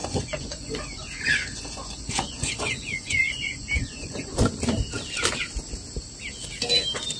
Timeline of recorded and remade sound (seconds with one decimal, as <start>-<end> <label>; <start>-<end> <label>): 0.0-4.3 remade; 4.3-7.2 recorded